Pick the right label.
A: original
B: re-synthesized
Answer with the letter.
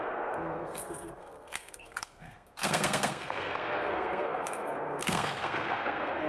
B